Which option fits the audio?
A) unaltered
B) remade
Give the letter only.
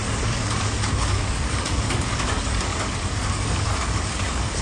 B